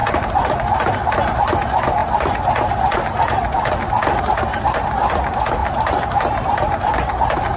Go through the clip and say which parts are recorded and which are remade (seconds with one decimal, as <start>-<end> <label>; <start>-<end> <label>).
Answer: 0.0-1.1 remade; 1.1-7.6 recorded